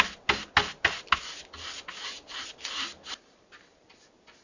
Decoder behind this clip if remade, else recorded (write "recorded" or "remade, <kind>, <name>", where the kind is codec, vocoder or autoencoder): recorded